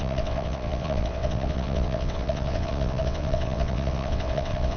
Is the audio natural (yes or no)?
no